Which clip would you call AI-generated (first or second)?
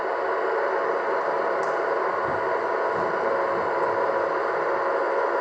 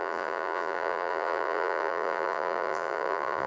second